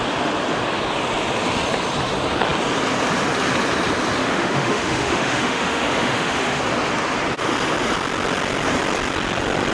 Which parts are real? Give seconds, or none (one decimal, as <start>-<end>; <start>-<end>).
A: 0.0-4.2; 6.6-9.7